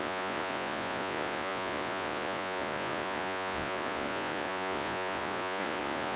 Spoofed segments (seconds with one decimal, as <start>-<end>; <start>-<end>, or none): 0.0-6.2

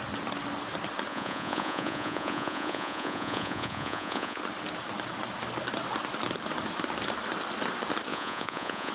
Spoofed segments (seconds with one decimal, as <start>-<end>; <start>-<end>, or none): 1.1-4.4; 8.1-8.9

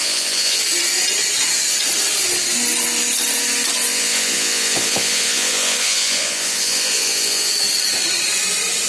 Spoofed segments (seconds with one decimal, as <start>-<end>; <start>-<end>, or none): 0.0-0.6; 3.9-7.5

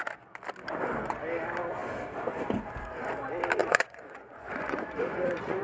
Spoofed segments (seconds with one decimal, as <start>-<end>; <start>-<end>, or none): 3.6-5.6

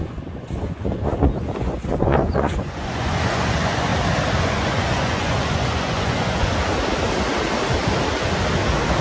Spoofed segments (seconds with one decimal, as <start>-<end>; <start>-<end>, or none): 0.0-3.9; 4.4-6.5

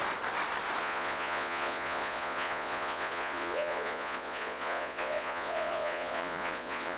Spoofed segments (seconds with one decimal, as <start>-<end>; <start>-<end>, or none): 0.8-7.0